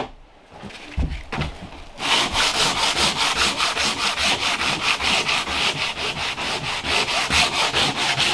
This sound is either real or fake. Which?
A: real